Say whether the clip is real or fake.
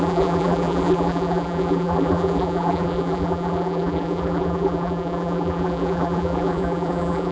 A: fake